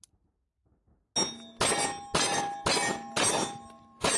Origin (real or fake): real